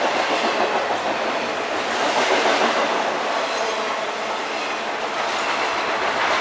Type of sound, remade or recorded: recorded